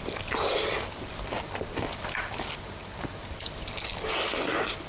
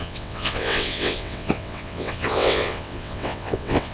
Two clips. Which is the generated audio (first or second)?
second